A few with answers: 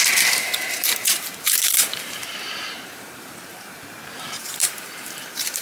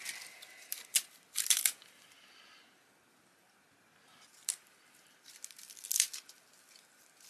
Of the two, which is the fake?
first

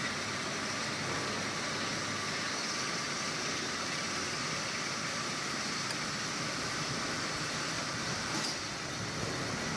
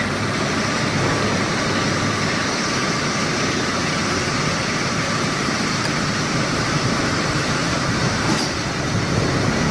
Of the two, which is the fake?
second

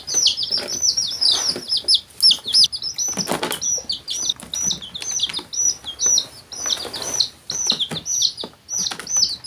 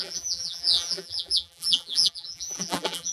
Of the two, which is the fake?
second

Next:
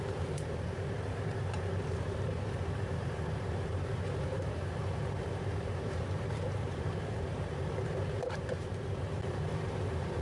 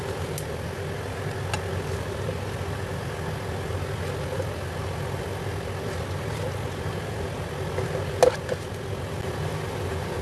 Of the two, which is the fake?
first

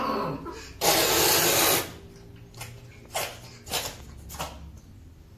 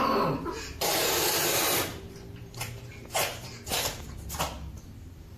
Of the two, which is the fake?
second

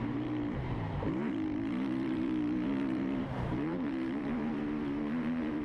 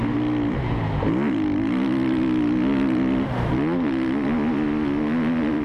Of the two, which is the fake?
first